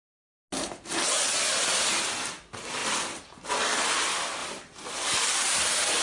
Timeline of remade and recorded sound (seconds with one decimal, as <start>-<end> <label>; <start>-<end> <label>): 0.0-2.8 recorded; 2.8-3.5 remade; 3.5-4.4 recorded; 4.4-5.3 remade; 5.3-6.0 recorded